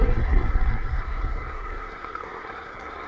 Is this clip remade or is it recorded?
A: remade